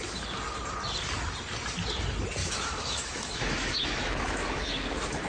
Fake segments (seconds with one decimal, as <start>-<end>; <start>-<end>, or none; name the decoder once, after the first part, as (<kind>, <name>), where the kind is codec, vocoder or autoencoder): 2.4-5.3 (autoencoder, DAC-VAE)